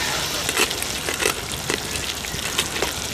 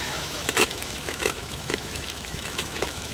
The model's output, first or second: second